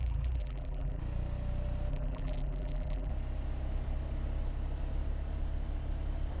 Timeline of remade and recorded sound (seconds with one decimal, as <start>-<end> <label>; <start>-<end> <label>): 0.0-1.0 remade; 1.0-1.9 recorded; 1.9-3.1 remade; 3.1-6.4 recorded